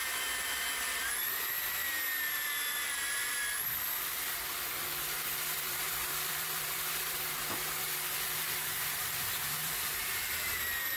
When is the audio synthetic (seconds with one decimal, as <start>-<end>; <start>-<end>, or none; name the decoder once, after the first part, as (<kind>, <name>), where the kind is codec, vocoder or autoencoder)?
0.0-11.0 (vocoder, BigVGAN v2)